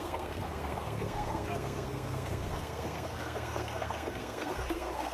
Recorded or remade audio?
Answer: remade